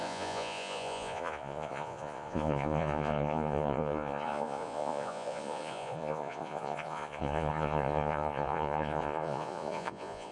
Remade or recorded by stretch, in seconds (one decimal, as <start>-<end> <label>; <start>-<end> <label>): 0.0-10.3 remade